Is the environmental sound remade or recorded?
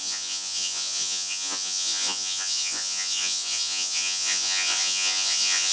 remade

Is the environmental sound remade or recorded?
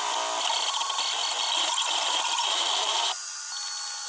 recorded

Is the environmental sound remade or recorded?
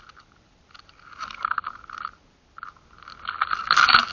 recorded